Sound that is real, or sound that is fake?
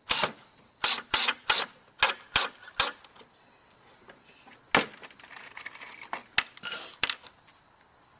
real